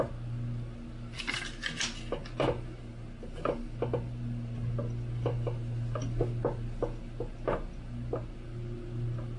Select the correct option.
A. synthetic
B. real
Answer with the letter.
B